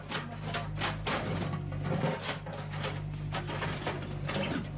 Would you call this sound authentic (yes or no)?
yes